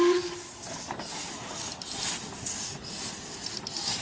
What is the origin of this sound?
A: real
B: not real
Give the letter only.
A